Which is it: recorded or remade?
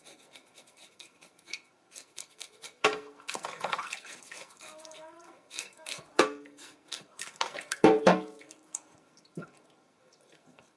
remade